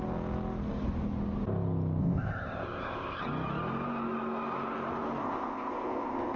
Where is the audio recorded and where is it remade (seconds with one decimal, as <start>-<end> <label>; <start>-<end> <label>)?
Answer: 0.0-2.0 recorded; 2.0-3.2 remade; 3.2-5.2 recorded; 5.2-6.4 remade